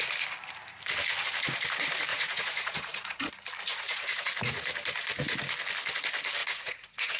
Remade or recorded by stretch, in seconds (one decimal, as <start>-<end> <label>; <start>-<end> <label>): 0.0-2.1 recorded; 2.1-3.3 remade; 3.3-3.7 recorded; 3.7-4.3 remade; 4.3-6.4 recorded; 6.4-7.2 remade